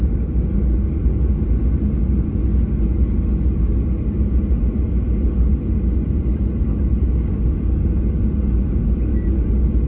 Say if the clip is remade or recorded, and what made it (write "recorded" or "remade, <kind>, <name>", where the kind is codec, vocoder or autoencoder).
recorded